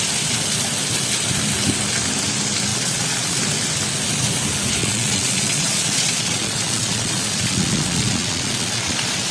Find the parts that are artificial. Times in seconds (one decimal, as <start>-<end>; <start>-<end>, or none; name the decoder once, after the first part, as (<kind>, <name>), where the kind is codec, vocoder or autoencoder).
2.7-3.4 (vocoder, Vocos); 4.8-9.3

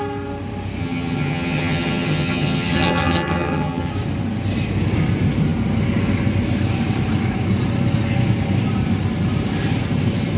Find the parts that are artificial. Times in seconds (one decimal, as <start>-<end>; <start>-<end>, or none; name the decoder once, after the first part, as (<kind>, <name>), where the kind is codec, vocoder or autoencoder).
0.8-3.9 (vocoder, HiFi-GAN)